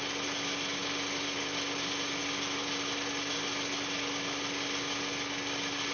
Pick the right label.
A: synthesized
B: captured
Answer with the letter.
B